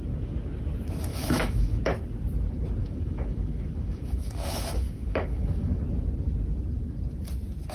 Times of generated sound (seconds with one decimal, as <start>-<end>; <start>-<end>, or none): 1.1-1.8; 2.8-5.8